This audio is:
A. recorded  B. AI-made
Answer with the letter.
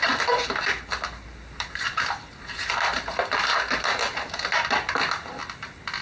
B